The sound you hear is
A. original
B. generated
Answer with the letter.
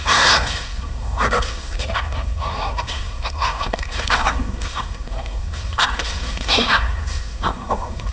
B